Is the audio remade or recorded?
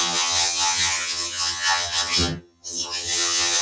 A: remade